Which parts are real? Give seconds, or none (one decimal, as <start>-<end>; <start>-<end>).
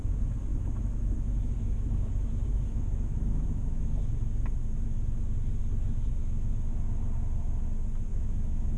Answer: 0.0-0.5; 4.0-8.1